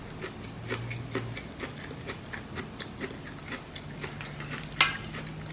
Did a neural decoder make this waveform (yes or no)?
no